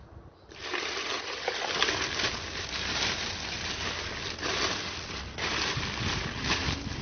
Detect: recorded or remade recorded